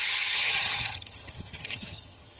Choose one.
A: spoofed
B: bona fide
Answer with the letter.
A